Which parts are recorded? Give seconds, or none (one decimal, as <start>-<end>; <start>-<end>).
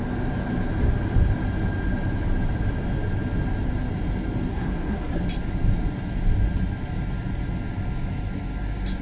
0.0-4.5; 5.2-9.0